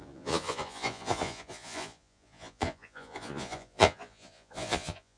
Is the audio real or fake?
fake